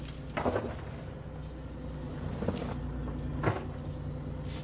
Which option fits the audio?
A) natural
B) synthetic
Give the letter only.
A